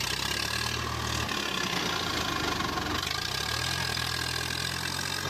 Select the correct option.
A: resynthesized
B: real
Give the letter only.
B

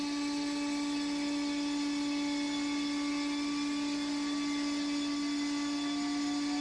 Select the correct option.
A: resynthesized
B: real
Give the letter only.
B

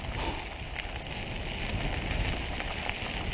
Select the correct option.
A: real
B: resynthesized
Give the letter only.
A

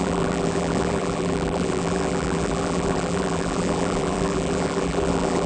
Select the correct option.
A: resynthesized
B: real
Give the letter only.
A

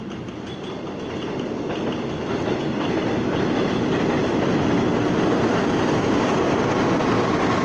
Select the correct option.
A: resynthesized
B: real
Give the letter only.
B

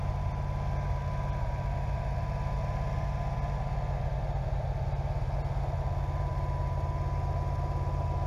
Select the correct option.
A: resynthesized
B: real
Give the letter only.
B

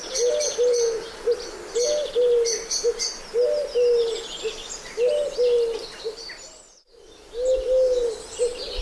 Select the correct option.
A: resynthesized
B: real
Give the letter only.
B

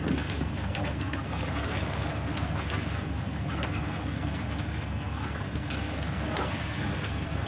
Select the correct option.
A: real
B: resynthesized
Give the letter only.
B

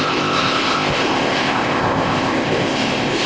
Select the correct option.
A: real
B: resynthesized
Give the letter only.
B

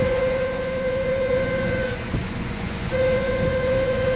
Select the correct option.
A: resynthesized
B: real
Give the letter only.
A